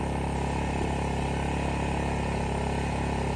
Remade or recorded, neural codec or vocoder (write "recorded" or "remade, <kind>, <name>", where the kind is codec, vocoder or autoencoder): recorded